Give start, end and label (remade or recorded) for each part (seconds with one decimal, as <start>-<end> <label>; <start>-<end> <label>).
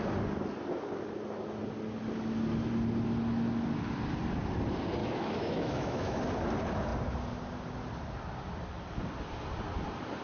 0.0-5.0 recorded; 5.0-6.2 remade; 6.2-10.2 recorded